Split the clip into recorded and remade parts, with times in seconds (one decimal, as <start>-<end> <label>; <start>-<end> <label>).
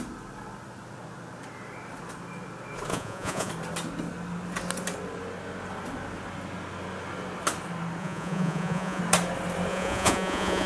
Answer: 0.0-2.9 recorded; 2.9-3.5 remade; 3.5-8.0 recorded; 8.0-9.0 remade; 9.0-9.7 recorded; 9.7-10.7 remade